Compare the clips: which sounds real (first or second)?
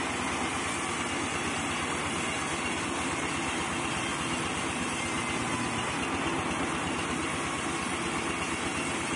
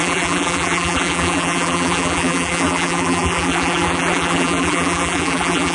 first